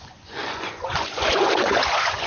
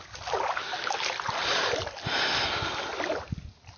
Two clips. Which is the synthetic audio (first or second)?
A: first